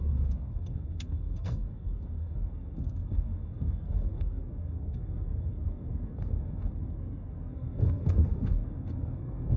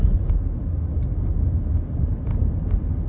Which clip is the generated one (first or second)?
first